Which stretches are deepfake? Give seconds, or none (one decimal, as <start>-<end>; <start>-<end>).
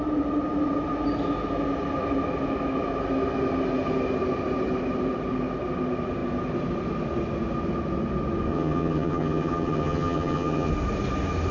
8.5-10.7